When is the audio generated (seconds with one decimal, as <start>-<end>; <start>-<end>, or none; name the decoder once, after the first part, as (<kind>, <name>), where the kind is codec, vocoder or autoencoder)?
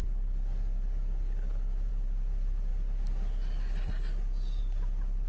none